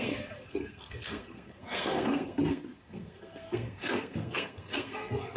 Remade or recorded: remade